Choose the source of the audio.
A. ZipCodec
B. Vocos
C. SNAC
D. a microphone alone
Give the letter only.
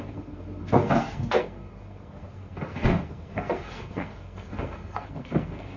C